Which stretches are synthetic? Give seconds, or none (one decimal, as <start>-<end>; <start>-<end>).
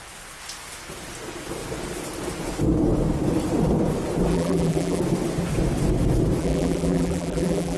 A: 4.3-5.0; 6.4-7.8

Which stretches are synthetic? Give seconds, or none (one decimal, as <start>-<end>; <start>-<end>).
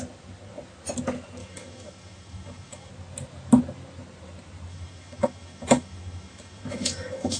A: 1.4-2.9; 4.7-7.4